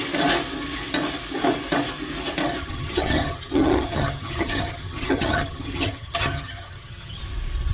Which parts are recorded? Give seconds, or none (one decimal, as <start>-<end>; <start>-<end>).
0.0-2.6; 7.2-7.7